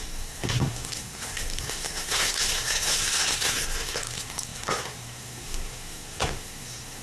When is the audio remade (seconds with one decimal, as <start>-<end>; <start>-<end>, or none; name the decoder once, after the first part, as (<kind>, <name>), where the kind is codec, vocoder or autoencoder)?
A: 0.0-7.0 (codec, SNAC)